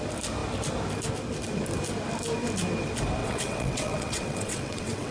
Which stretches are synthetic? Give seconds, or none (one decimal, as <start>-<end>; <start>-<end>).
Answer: 3.2-5.1